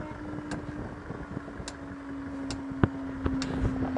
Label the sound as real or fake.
real